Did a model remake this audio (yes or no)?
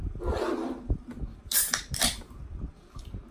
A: no